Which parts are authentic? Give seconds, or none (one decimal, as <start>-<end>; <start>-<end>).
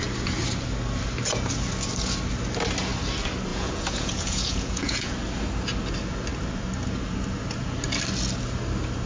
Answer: 0.0-3.5; 5.1-9.1